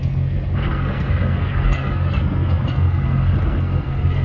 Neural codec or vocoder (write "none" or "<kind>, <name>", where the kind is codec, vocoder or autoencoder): codec, SNAC